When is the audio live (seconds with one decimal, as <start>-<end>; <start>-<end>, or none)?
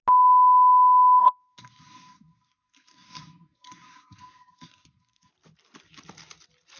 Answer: 0.0-1.2; 5.3-6.8